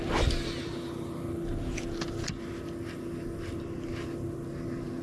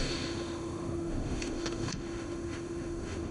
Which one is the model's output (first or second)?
second